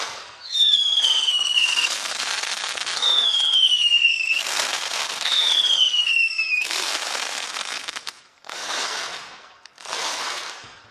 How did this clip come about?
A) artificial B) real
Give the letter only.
A